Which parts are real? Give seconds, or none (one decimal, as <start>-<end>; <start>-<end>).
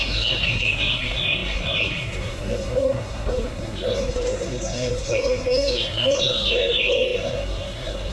none